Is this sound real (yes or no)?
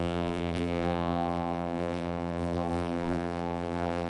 no